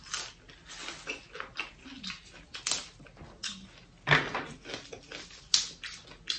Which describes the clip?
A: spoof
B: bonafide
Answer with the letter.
B